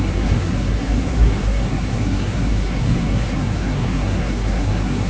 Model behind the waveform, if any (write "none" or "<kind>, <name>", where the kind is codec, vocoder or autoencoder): codec, SNAC